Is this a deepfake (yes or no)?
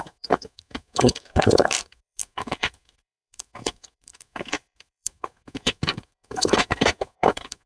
yes